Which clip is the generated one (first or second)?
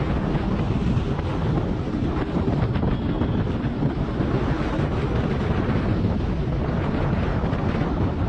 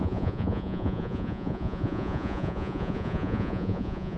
second